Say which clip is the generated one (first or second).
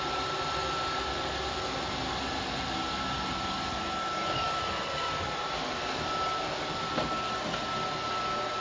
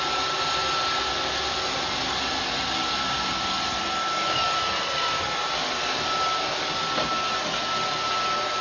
first